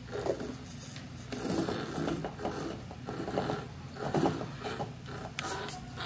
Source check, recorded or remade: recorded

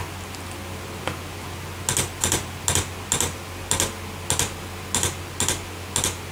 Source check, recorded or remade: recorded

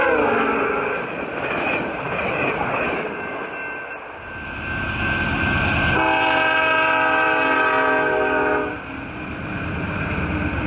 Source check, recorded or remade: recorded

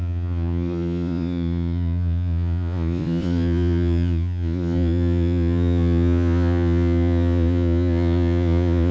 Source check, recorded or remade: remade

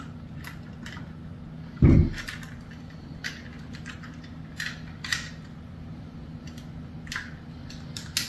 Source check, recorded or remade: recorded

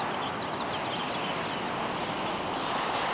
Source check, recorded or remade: recorded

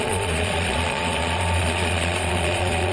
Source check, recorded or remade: remade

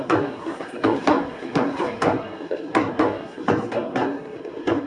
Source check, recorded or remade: remade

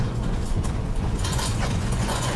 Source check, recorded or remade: remade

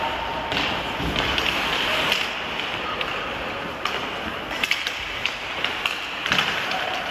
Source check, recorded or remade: recorded